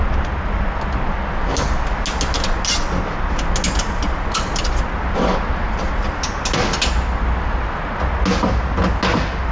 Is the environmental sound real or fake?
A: real